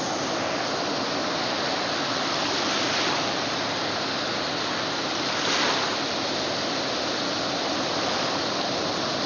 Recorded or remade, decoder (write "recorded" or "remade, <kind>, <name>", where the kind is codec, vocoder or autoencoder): recorded